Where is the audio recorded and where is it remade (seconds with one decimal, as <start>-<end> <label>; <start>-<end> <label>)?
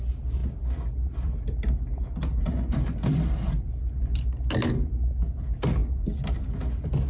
0.0-7.1 recorded